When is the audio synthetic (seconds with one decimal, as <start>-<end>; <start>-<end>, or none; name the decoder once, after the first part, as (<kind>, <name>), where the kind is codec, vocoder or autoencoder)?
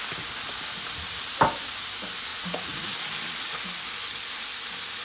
2.3-2.9 (vocoder, Vocos)